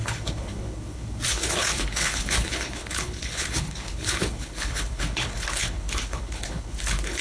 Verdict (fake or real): fake